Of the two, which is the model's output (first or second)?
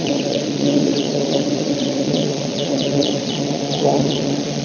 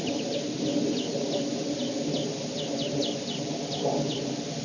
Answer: first